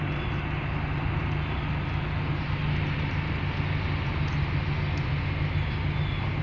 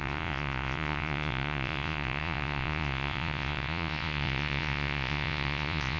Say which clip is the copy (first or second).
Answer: second